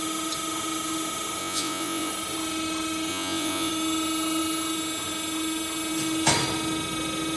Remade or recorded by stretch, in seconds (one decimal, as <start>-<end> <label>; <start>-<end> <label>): 0.0-1.4 recorded; 1.4-2.1 remade; 2.1-3.1 recorded; 3.1-3.7 remade; 3.7-7.4 recorded